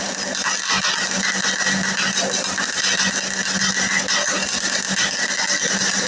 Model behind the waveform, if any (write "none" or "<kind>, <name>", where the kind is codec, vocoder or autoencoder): none